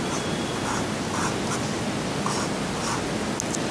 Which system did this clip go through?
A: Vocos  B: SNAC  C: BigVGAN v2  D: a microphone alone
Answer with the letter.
D